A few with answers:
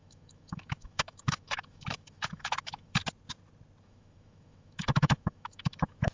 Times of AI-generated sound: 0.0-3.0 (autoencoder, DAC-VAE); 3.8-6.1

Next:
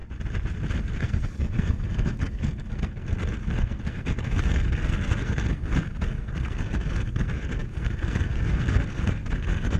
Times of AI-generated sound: 0.8-9.8 (codec, SNAC)

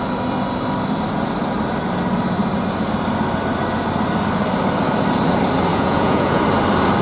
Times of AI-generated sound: 5.7-6.4 (vocoder, Vocos)

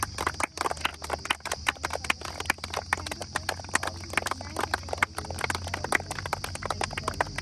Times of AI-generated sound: none

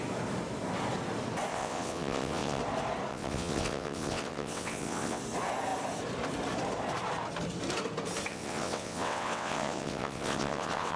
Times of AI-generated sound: 1.5-2.6 (vocoder, WaveNeXt); 3.1-5.2; 8.3-11.0

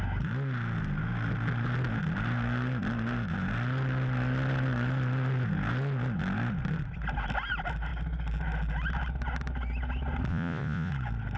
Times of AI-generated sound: 10.3-10.9 (vocoder, Vocos)